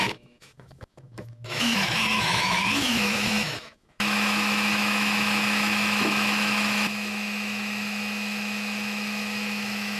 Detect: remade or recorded remade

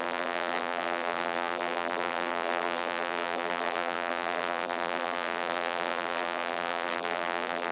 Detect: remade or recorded remade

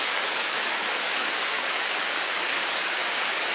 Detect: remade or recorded remade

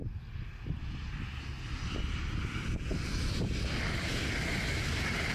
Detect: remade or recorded recorded